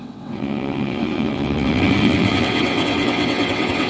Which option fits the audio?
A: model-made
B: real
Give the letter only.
A